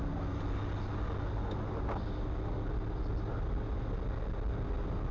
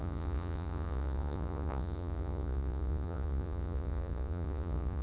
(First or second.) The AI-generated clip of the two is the second